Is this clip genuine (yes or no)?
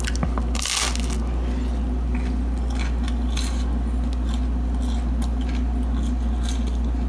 yes